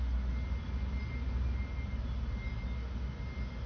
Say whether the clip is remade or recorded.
recorded